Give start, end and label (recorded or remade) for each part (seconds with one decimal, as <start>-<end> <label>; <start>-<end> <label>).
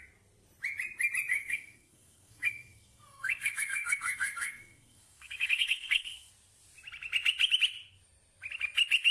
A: 0.0-1.3 recorded; 1.3-6.3 remade; 6.3-9.1 recorded